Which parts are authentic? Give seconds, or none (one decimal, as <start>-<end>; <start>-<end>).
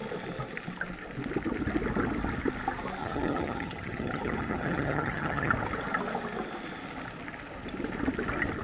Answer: 0.0-3.0; 5.5-8.6